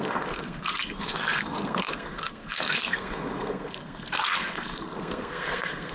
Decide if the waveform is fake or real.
fake